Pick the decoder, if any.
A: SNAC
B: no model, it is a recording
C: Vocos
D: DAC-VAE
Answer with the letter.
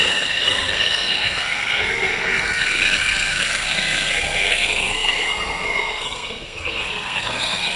A